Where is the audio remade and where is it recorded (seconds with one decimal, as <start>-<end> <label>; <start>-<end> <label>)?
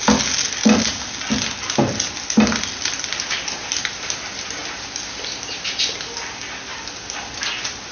0.0-7.9 recorded